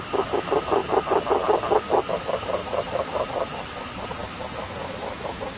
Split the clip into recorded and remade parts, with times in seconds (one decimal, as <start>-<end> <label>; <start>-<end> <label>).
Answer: 0.0-5.6 recorded